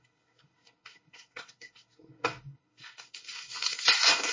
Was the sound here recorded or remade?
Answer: remade